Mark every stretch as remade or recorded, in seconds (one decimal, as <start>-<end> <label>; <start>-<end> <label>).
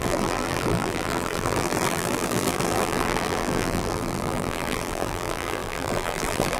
0.0-6.6 remade